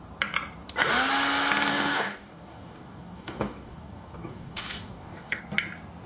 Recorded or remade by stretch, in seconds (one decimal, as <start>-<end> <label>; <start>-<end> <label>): 0.0-1.7 recorded; 1.7-5.4 remade; 5.4-6.1 recorded

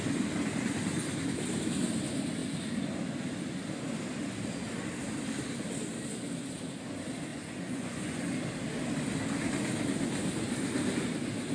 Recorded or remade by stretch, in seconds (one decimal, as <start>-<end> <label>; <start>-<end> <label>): 0.0-7.3 recorded; 7.3-8.2 remade; 8.2-11.5 recorded

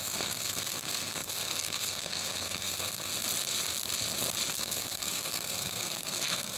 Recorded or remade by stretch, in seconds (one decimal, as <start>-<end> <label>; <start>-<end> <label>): 0.0-3.1 remade; 3.1-4.5 recorded; 4.5-6.6 remade

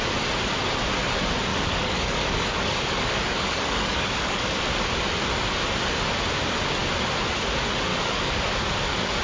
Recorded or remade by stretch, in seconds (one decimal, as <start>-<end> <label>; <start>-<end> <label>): 0.0-1.5 recorded; 1.5-4.6 remade; 4.6-7.9 recorded; 7.9-9.2 remade

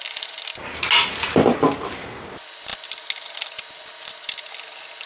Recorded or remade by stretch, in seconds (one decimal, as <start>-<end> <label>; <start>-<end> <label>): 0.0-5.1 recorded

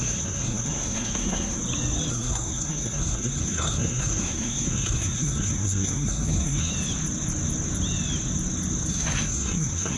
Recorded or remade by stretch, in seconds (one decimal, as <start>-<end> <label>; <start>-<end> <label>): 0.0-1.6 remade; 1.6-2.1 recorded; 2.1-6.7 remade; 6.7-8.9 recorded; 8.9-10.0 remade